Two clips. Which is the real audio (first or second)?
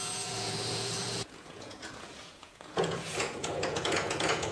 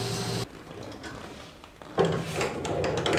second